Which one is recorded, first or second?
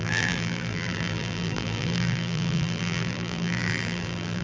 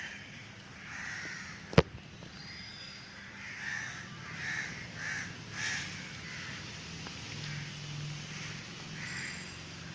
second